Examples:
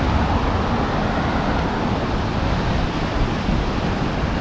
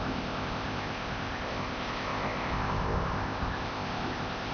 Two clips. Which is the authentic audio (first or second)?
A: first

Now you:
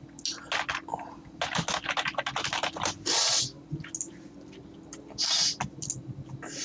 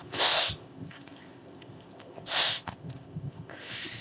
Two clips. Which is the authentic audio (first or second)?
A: first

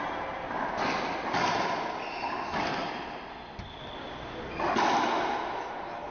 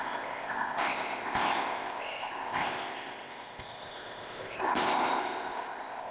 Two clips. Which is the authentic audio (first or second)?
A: first